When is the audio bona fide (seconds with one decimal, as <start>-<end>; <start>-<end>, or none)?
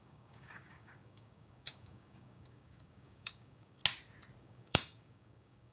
3.8-4.4